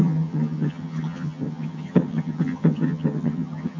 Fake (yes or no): yes